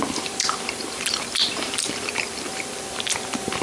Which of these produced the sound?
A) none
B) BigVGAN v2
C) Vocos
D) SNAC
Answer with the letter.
B